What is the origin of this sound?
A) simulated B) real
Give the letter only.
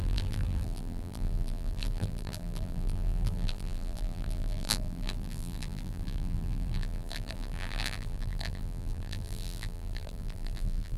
A